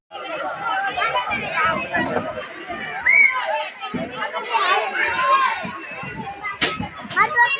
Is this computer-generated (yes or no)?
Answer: no